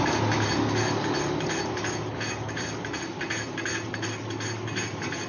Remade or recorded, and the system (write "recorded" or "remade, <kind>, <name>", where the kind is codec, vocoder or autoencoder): recorded